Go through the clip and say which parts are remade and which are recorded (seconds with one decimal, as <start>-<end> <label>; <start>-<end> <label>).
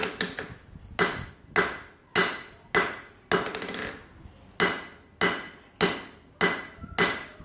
0.0-7.4 recorded